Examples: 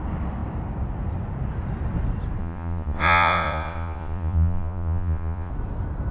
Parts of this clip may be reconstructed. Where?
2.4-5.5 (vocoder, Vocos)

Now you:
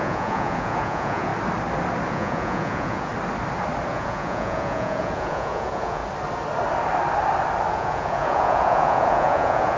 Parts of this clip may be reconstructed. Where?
0.0-1.3 (vocoder, Vocos); 2.1-3.1; 3.9-6.0; 7.7-9.8

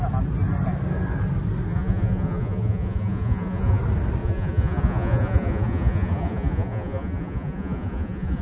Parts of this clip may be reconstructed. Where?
1.7-3.8 (vocoder, Vocos); 4.2-8.4